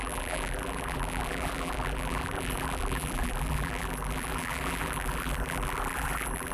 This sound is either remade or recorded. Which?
remade